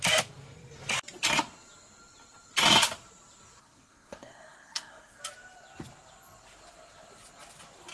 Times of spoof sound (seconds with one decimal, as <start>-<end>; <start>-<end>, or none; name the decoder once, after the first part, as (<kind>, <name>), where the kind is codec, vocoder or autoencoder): 3.6-5.2 (codec, SNAC)